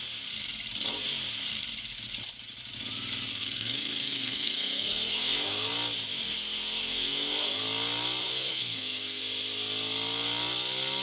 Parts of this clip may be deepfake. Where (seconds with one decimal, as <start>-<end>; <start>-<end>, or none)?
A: 3.3-5.7; 6.8-7.6; 8.2-9.2